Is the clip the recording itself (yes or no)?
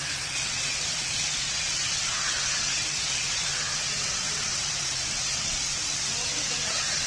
no